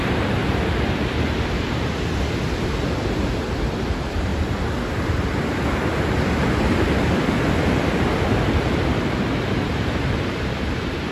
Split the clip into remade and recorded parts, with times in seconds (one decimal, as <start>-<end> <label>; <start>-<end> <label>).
0.0-0.4 remade; 0.4-3.9 recorded; 3.9-4.3 remade; 4.3-9.4 recorded; 9.4-11.1 remade